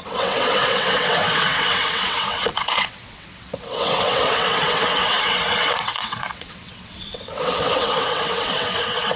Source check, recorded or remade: remade